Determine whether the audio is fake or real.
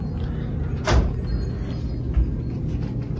real